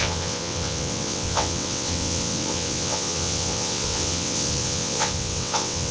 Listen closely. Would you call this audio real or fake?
fake